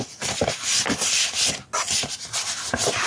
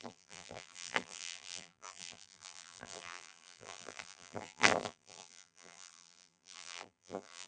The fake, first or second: second